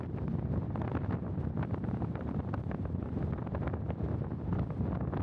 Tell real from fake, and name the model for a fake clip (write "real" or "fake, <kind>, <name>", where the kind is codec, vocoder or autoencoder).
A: real